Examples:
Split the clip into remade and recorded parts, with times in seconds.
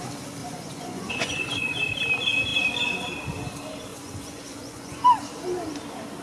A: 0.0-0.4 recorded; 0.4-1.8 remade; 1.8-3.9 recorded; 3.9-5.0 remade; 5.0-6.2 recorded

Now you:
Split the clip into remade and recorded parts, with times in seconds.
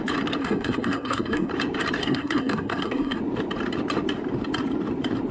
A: 0.0-0.4 recorded; 0.4-1.5 remade; 1.5-2.0 recorded; 2.0-3.2 remade; 3.2-5.3 recorded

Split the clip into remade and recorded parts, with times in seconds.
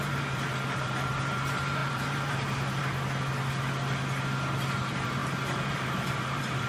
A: 0.0-2.8 remade; 2.8-4.8 recorded; 4.8-5.2 remade; 5.2-5.7 recorded; 5.7-6.7 remade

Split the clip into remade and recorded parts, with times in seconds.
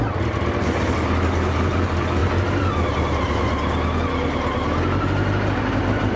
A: 0.0-6.2 recorded